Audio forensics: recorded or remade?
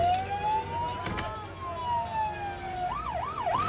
recorded